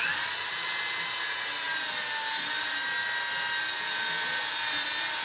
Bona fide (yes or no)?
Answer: yes